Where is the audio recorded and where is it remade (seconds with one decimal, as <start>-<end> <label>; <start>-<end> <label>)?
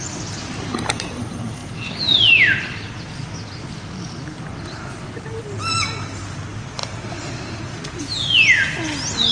0.0-9.3 recorded